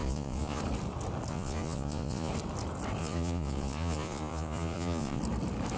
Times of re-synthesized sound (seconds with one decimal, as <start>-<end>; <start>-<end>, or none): 0.0-0.6; 1.3-2.3; 3.0-5.2